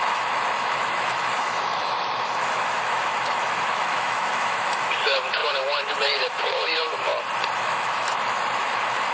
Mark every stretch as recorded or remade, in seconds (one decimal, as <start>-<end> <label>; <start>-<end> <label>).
0.0-7.1 remade; 7.1-7.6 recorded; 7.6-9.1 remade